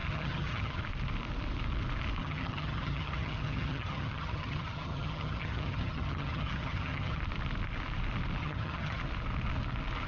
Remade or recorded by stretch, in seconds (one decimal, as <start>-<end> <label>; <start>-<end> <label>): 0.0-0.8 remade; 0.8-2.2 recorded; 2.2-7.2 remade; 7.2-8.4 recorded; 8.4-9.0 remade; 9.0-10.1 recorded